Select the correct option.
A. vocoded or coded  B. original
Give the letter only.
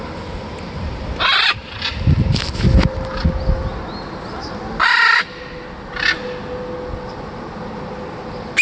B